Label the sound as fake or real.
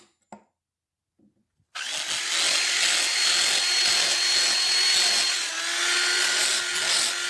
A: real